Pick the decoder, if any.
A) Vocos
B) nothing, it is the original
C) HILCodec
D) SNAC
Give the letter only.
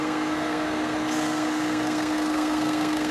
D